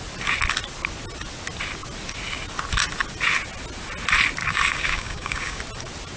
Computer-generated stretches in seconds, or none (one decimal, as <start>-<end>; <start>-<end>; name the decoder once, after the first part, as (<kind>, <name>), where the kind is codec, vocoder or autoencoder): 4.4-5.6 (codec, DAC)